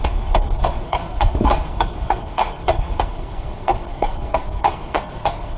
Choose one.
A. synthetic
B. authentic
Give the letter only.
A